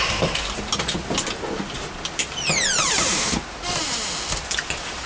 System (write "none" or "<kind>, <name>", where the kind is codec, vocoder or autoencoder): none